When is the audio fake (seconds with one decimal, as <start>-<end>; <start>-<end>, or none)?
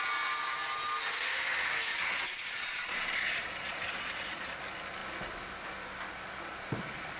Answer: 1.9-4.5